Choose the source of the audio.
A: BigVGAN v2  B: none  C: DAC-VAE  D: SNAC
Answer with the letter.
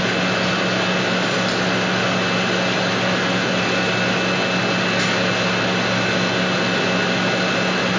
B